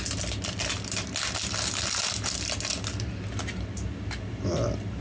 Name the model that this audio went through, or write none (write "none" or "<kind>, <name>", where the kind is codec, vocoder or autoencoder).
none